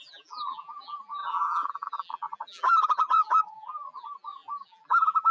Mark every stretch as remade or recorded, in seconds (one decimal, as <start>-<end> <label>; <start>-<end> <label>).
0.0-5.3 remade